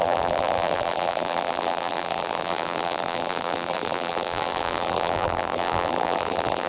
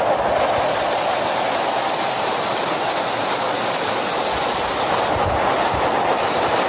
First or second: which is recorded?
second